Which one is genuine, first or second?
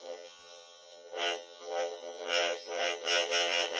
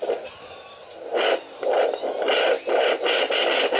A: second